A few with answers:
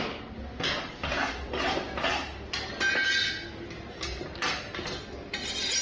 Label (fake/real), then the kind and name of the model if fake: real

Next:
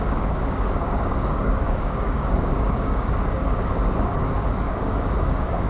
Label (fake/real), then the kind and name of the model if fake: fake, codec, DAC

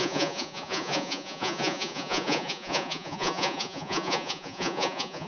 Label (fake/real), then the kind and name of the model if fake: fake, vocoder, Vocos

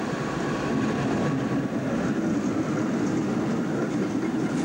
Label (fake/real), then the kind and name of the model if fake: real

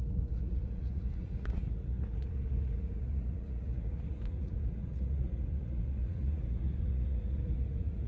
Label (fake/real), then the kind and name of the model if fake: fake, vocoder, Vocos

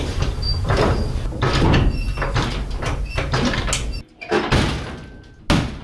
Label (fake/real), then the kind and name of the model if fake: real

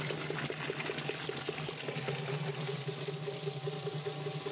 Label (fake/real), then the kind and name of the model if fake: real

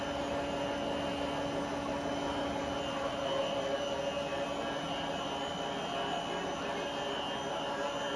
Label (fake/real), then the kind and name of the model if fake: real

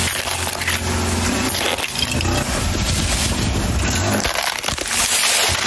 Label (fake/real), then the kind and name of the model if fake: real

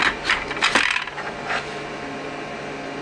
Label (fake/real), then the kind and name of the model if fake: real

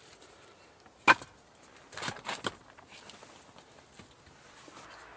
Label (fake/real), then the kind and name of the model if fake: real